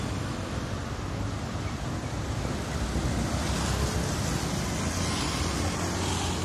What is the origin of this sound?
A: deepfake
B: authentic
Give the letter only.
B